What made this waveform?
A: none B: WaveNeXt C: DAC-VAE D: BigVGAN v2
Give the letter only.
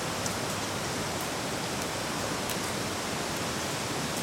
A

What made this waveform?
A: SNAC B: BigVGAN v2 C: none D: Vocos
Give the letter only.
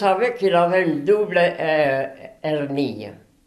C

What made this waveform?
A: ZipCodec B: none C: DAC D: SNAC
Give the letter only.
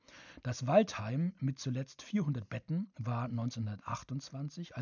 B